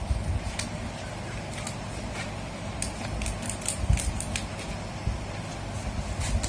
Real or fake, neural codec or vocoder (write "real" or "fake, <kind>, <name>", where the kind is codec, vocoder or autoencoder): real